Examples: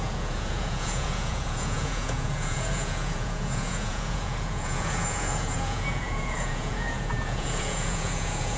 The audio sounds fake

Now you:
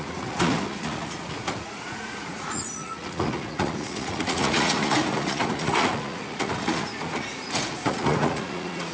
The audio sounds fake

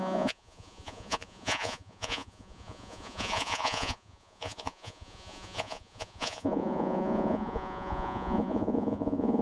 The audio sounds fake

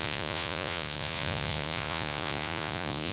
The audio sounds fake